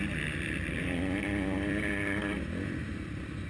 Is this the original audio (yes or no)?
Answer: no